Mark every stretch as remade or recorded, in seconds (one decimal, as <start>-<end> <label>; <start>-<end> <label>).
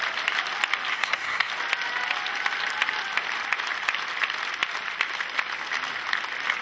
0.0-0.9 recorded; 0.9-1.5 remade; 1.5-6.6 recorded